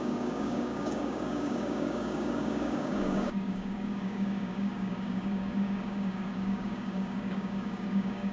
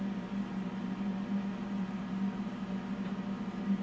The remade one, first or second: first